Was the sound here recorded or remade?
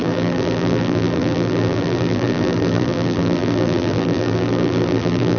remade